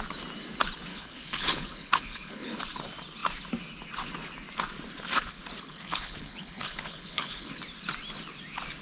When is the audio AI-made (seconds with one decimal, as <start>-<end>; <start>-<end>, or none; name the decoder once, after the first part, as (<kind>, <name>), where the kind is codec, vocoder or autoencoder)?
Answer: 0.9-2.6 (codec, HILCodec); 5.7-7.6